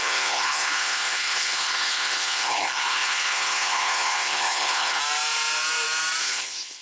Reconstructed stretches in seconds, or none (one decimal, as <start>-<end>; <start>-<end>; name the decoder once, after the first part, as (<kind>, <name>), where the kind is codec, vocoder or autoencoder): 0.0-5.0 (codec, HILCodec); 6.2-6.8